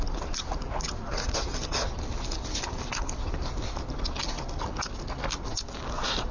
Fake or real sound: real